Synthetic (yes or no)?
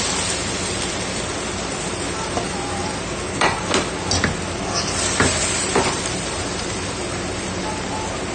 no